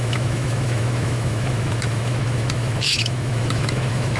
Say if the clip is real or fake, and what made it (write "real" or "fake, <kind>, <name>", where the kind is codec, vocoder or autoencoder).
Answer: fake, autoencoder, DAC-VAE